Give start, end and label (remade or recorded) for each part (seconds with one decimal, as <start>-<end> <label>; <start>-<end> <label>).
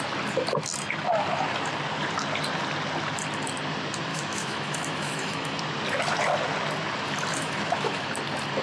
0.0-4.1 recorded; 4.1-5.6 remade; 5.6-7.3 recorded; 7.3-8.1 remade; 8.1-8.6 recorded